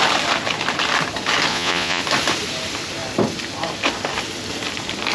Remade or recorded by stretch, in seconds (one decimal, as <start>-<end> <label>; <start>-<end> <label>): 0.0-1.5 recorded; 1.5-2.0 remade; 2.0-5.1 recorded